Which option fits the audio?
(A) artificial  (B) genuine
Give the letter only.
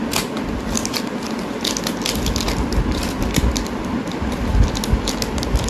B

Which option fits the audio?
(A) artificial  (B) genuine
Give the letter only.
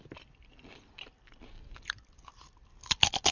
B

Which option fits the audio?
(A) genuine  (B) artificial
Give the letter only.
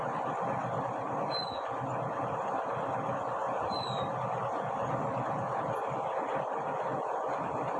A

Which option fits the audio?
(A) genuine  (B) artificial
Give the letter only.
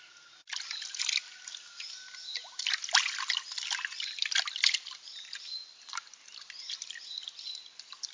A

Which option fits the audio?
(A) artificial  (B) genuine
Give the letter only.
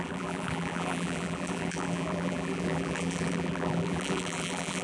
A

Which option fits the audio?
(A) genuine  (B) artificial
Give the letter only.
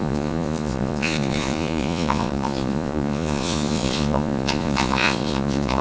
B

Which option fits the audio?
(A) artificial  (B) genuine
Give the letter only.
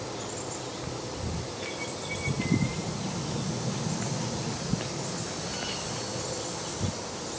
B